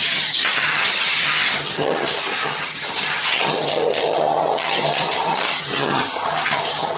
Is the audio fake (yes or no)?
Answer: yes